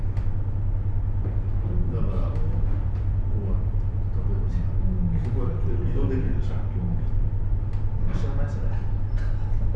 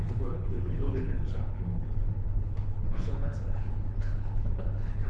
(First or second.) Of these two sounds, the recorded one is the first